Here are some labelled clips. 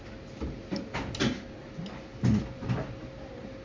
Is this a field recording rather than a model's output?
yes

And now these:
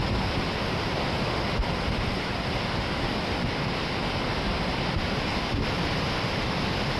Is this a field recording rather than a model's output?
yes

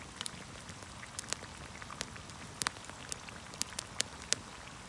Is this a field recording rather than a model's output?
yes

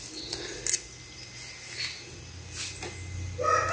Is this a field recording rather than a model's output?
yes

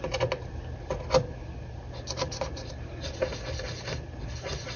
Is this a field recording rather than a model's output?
yes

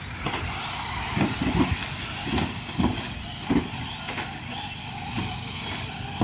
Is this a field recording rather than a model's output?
yes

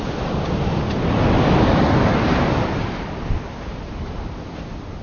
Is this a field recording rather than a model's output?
yes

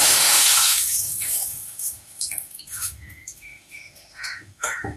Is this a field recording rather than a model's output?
no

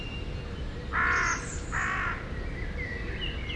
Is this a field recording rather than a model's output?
yes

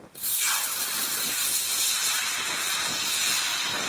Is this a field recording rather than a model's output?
yes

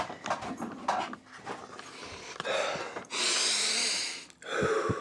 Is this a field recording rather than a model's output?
yes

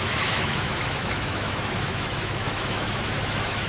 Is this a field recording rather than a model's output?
no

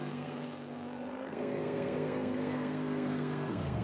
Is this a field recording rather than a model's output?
no